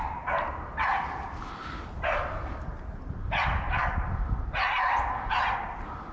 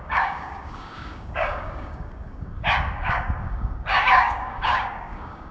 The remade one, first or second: second